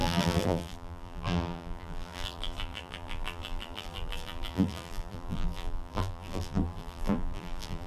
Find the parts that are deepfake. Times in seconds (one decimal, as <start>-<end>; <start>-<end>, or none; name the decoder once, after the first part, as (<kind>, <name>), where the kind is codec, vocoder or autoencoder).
0.0-7.9 (vocoder, BigVGAN v2)